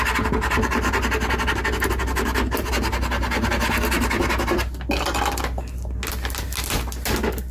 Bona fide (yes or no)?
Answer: yes